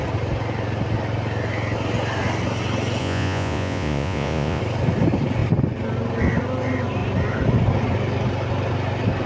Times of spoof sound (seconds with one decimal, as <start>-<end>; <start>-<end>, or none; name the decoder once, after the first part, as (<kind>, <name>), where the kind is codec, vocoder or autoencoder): 3.0-4.6 (vocoder, Vocos)